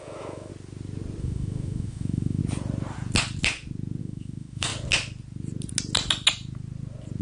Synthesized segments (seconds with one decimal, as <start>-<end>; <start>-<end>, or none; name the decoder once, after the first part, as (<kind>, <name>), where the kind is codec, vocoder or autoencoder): 0.0-0.5 (autoencoder, DAC-VAE); 1.2-2.4; 4.0-4.7